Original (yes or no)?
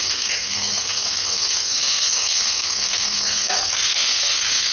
no